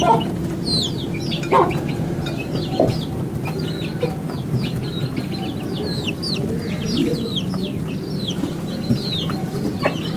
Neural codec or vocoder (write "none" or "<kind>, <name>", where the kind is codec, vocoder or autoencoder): none